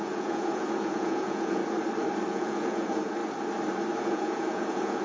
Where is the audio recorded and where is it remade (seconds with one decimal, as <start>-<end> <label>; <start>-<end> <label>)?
0.0-1.6 remade; 1.6-2.3 recorded; 2.3-3.2 remade; 3.2-4.0 recorded; 4.0-5.0 remade